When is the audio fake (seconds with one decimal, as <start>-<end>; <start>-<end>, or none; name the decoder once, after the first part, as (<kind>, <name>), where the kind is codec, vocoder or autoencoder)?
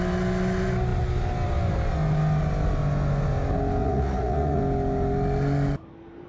3.8-4.6 (vocoder, Vocos)